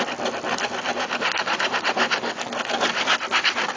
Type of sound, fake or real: real